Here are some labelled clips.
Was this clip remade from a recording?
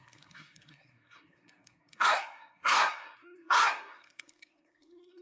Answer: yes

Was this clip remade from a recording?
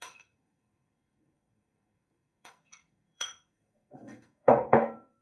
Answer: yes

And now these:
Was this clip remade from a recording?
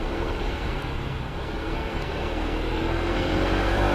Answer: yes